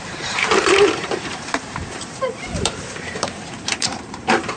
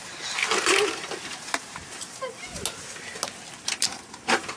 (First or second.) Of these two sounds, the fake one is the first